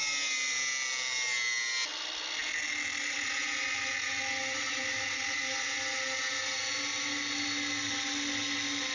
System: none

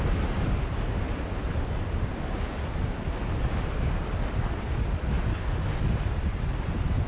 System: none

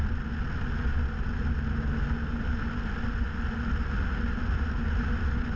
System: none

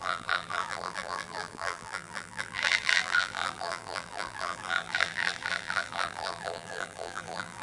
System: vocoder, BigVGAN v2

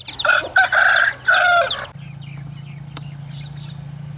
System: none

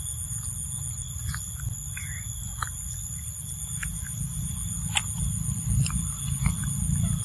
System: none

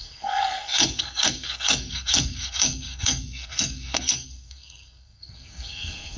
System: codec, SNAC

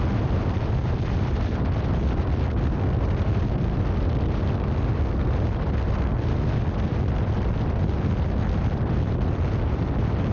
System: none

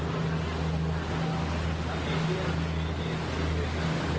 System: none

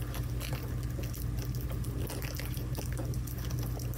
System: none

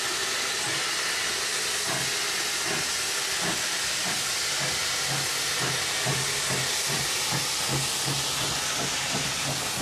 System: none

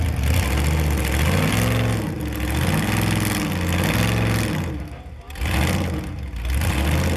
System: none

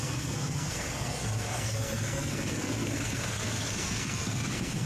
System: codec, SNAC